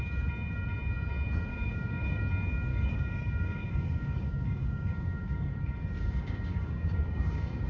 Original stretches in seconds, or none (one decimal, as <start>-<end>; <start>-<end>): 0.0-1.5; 2.2-2.7; 5.6-6.0